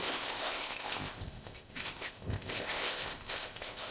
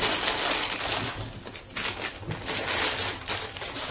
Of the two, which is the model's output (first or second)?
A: first